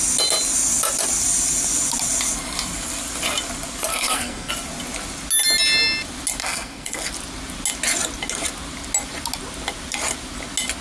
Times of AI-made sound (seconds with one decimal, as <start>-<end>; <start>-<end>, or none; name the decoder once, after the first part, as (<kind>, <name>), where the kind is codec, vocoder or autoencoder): 3.9-4.5 (codec, SNAC); 6.4-7.1